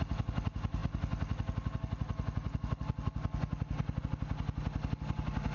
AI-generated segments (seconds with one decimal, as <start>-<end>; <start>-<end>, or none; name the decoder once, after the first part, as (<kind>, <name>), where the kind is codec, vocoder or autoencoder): none